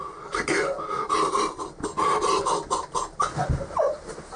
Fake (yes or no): no